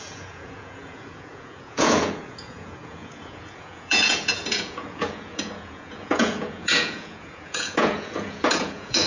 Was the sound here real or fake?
fake